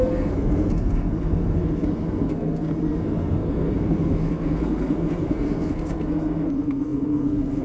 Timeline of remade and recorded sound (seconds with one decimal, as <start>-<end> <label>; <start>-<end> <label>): 0.0-7.6 remade